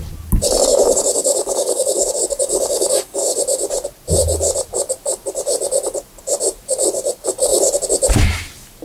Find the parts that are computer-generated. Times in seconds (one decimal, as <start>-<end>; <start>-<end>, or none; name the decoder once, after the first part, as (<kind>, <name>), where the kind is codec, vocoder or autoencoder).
0.7-3.4 (codec, DAC)

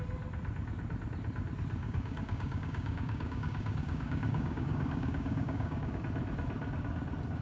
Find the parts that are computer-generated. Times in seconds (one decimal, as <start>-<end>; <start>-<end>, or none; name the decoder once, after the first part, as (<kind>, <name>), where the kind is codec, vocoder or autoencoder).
1.8-6.0 (codec, DAC)

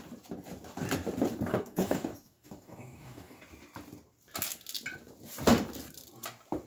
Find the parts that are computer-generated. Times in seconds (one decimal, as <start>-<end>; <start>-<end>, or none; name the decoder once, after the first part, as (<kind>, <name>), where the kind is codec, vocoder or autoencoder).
1.5-3.4 (codec, DAC)

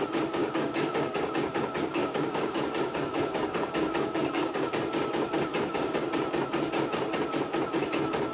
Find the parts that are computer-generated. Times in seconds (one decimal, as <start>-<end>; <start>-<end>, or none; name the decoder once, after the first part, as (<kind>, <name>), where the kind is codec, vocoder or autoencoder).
0.4-4.7 (codec, DAC); 5.5-6.1

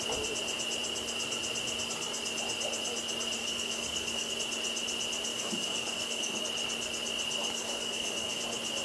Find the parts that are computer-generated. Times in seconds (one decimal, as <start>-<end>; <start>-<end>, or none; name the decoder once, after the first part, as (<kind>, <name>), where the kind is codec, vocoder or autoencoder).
3.4-4.3 (codec, DAC); 5.3-6.4; 7.4-8.4

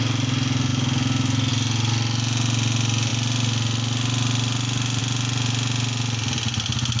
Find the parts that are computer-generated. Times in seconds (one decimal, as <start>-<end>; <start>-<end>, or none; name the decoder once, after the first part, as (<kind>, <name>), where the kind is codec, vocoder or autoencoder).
none